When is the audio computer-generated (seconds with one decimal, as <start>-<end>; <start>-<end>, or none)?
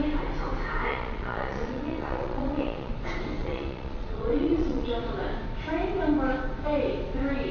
0.9-2.9; 3.4-4.9